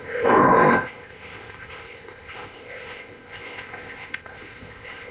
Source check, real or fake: fake